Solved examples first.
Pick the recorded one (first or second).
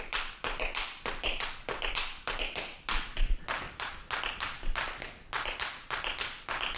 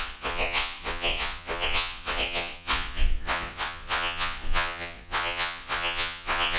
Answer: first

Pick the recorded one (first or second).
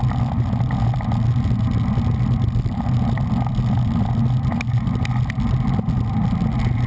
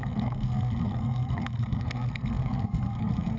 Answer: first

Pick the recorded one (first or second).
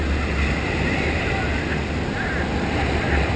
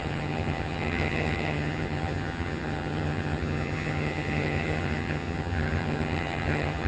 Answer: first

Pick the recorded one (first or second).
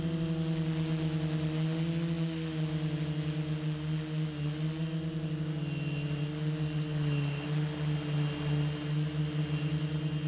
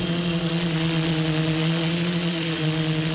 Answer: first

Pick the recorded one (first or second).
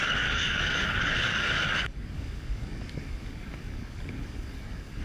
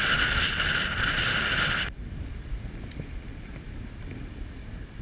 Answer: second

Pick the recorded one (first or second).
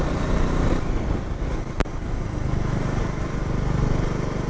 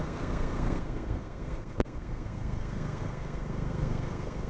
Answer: first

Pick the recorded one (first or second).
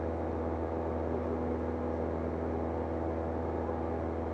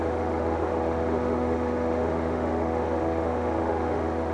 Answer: first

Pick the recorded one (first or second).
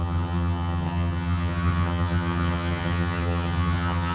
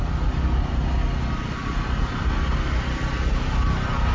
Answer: second